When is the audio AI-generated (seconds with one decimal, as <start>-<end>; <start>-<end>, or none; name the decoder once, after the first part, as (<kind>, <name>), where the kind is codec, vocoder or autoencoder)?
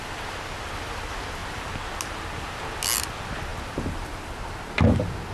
none